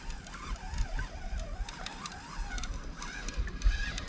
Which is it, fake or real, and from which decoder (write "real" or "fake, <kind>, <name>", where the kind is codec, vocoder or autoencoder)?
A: real